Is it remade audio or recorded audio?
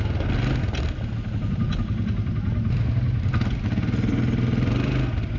recorded